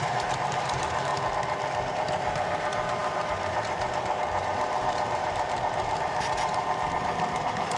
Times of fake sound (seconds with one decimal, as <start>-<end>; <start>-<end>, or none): 0.0-1.1; 1.9-7.8